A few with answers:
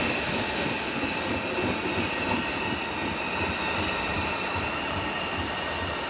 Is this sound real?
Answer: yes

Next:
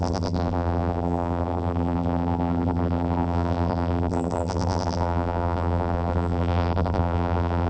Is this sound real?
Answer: no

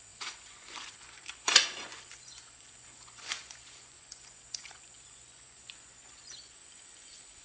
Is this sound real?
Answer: no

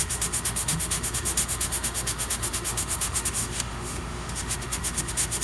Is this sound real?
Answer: no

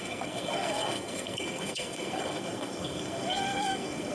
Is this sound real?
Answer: no